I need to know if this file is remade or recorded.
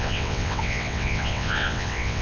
remade